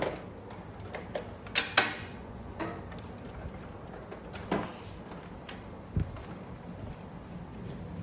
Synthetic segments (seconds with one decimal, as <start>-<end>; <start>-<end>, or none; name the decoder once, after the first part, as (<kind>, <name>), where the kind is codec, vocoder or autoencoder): 2.0-2.6 (vocoder, Vocos)

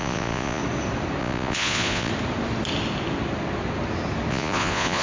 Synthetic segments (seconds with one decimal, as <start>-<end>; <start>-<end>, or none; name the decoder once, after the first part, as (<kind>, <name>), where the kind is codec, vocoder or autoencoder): 0.0-0.6 (vocoder, Vocos); 1.2-2.1; 4.3-5.0

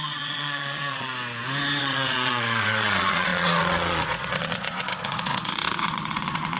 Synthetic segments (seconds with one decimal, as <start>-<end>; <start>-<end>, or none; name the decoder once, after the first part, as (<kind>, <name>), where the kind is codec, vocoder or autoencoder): 0.0-1.1 (vocoder, Vocos); 1.8-6.6

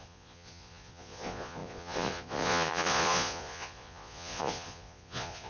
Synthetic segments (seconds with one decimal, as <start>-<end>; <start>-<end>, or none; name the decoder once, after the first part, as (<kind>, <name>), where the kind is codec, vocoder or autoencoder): 0.0-5.5 (vocoder, Vocos)

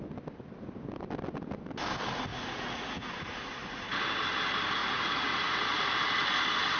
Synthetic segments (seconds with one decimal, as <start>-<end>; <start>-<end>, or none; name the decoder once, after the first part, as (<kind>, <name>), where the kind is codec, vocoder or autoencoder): 2.3-4.0 (vocoder, Vocos); 4.8-5.9

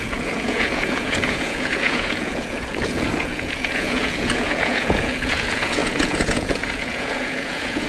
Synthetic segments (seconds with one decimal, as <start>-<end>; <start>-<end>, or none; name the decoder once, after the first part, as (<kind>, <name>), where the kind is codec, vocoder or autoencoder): 0.0-7.9 (vocoder, Vocos)

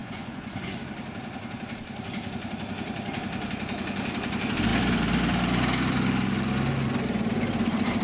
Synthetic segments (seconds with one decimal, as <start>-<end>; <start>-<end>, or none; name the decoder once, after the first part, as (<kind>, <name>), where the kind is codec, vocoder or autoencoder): 0.0-0.8 (vocoder, Vocos)